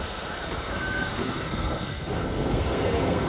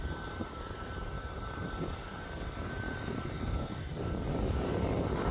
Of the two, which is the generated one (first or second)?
first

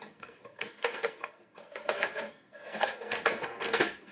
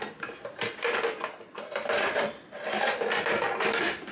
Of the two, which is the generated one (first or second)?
first